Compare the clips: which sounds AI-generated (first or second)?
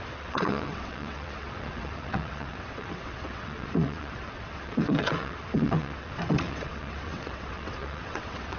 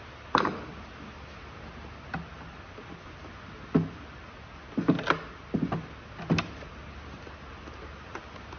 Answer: first